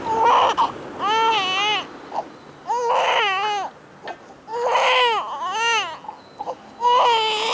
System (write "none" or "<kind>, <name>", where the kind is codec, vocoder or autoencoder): none